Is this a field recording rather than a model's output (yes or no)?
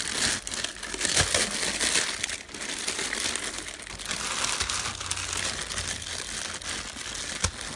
yes